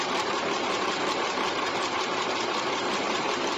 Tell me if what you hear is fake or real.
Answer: fake